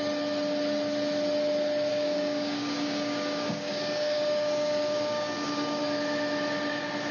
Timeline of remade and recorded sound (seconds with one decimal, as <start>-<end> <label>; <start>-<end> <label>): 0.0-1.9 recorded; 1.9-5.8 remade; 5.8-7.1 recorded